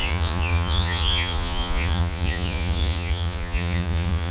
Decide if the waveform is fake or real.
fake